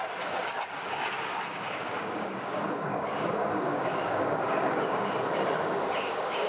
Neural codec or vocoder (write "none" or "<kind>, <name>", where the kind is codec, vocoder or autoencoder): codec, DAC